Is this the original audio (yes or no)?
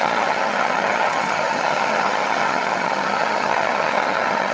no